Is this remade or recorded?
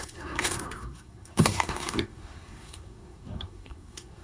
remade